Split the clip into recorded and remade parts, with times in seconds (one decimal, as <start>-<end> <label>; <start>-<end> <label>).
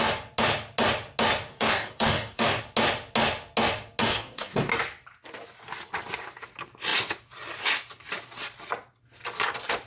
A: 0.0-1.5 recorded; 1.5-2.6 remade; 2.6-4.0 recorded; 4.0-4.7 remade; 4.7-9.9 recorded